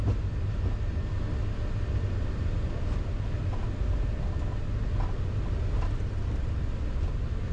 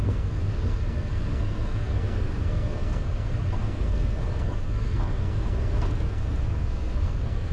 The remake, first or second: second